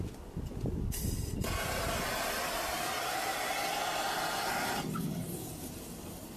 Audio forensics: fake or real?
real